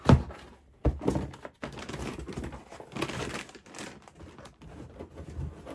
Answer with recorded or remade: recorded